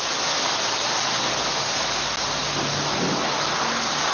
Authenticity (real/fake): real